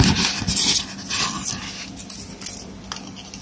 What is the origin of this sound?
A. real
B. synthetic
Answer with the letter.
A